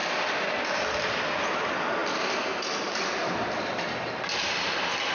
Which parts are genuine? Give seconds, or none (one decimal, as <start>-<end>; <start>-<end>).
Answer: 0.0-5.1